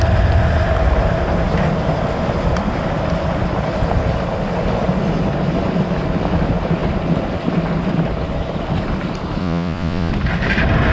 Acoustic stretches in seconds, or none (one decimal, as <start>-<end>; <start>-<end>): 0.0-9.4; 10.1-10.9